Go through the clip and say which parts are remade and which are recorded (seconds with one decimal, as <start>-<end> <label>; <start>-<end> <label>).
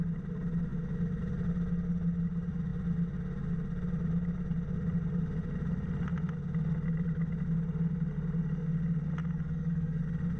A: 0.0-9.2 recorded; 9.2-10.0 remade; 10.0-10.4 recorded